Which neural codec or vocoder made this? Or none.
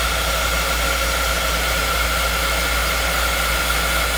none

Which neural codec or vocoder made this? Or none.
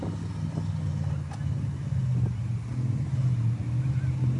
none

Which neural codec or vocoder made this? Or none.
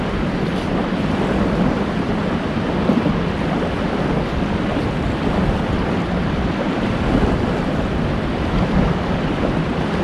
none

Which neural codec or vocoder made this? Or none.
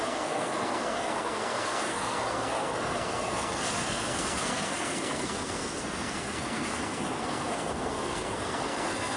codec, SNAC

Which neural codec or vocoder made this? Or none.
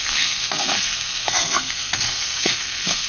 codec, SNAC